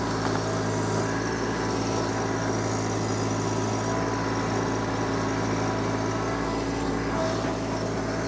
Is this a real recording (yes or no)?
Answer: yes